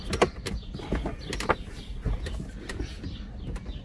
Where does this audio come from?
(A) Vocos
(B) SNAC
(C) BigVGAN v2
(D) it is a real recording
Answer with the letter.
D